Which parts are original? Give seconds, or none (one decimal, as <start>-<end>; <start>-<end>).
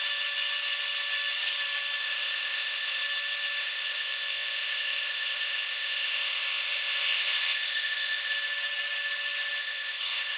0.0-2.0; 3.0-3.6; 8.3-9.6